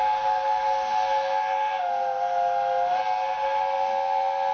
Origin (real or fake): real